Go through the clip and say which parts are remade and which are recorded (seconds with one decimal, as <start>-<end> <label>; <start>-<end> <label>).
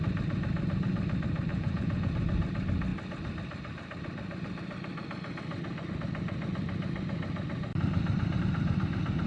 0.0-1.5 recorded; 1.5-2.1 remade; 2.1-9.3 recorded